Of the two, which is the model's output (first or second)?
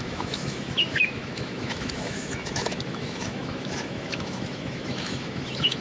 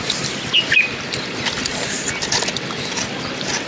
first